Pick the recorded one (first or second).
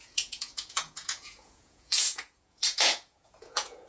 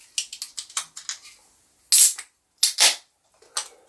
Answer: second